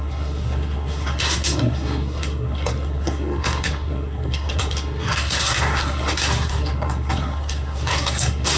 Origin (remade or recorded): remade